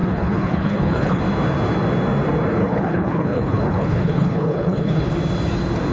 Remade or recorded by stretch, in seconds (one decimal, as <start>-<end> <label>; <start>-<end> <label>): 0.0-1.2 remade; 1.2-2.6 recorded; 2.6-5.1 remade; 5.1-5.9 recorded